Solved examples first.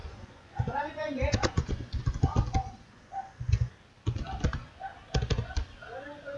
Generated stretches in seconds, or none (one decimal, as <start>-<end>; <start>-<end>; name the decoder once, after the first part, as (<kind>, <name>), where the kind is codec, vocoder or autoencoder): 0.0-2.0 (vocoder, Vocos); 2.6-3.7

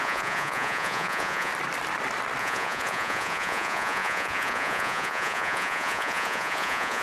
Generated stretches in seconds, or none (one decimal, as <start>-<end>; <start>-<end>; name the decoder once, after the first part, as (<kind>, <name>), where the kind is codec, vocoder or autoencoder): 0.0-1.5 (vocoder, Vocos); 2.4-7.0

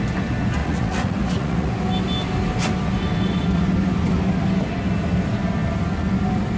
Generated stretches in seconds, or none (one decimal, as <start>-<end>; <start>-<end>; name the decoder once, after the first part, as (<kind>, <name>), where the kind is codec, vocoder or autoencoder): 0.6-1.7 (vocoder, Vocos)

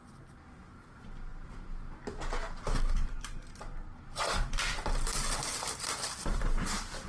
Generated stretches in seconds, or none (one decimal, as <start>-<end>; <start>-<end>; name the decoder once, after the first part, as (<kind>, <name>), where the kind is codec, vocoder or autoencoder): none

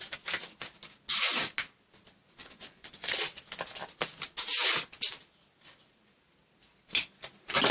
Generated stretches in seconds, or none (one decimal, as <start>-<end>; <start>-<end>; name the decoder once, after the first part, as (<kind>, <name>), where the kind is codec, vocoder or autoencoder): 2.4-3.1 (vocoder, Vocos)